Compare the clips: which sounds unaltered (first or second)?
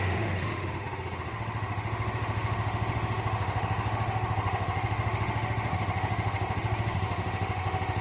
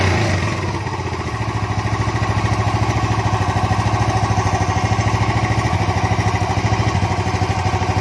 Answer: second